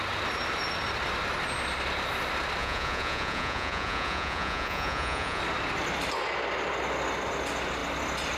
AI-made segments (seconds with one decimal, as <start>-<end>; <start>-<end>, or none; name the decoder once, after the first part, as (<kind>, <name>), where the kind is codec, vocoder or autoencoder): 2.6-5.4 (vocoder, Vocos)

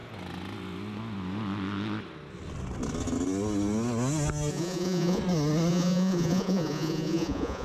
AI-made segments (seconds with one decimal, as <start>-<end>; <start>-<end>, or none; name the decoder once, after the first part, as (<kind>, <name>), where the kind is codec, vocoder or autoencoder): 4.5-5.2 (vocoder, Vocos); 5.7-7.6

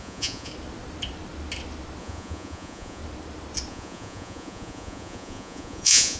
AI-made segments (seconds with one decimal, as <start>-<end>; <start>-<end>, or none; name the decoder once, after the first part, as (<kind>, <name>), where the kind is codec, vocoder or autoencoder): 0.0-0.5 (vocoder, Vocos); 2.0-3.0; 3.7-6.2

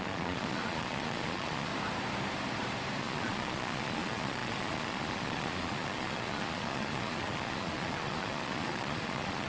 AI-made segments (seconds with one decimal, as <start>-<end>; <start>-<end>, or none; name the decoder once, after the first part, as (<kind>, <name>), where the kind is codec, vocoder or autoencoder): 0.0-1.7 (vocoder, Vocos); 3.0-9.5